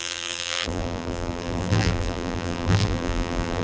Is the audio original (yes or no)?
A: no